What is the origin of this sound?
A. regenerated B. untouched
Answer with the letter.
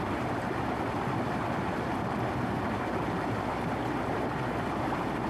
B